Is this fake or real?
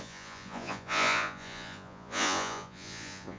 fake